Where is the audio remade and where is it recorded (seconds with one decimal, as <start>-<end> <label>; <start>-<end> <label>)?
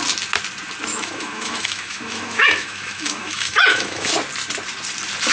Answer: 0.0-0.9 recorded; 0.9-4.1 remade; 4.1-5.3 recorded